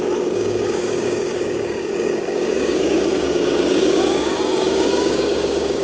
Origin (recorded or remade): remade